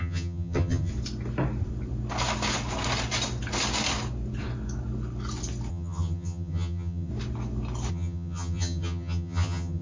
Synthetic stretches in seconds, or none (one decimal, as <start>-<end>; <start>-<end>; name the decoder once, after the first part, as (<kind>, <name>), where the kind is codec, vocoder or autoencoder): 0.0-0.9 (vocoder, HiFi-GAN); 5.7-7.1; 7.9-9.8